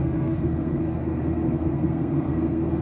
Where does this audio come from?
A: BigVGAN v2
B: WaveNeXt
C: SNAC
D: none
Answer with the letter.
C